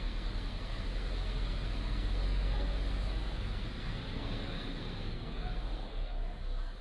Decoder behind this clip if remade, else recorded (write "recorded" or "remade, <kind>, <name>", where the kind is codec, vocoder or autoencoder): remade, codec, SNAC